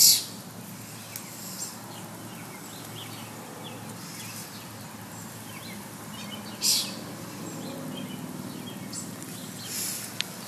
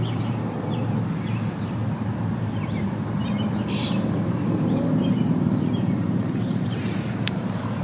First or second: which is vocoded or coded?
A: second